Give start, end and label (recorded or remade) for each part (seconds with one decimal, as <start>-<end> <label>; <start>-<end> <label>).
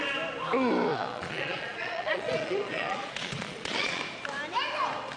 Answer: 0.0-0.9 recorded; 0.9-4.0 remade; 4.0-5.2 recorded